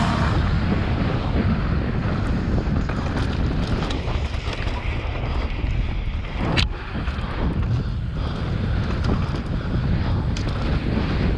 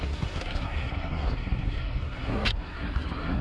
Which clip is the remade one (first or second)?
second